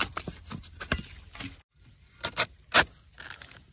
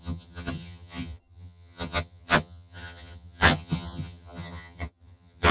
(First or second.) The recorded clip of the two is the first